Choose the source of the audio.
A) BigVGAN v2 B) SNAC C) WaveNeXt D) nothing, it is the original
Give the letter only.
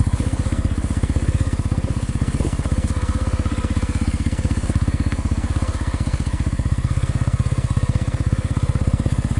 B